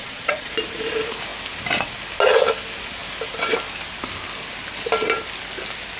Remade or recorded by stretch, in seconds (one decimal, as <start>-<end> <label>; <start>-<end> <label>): 0.0-0.5 remade; 0.5-6.0 recorded